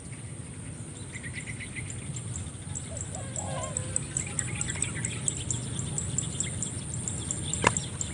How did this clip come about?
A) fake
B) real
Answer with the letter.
B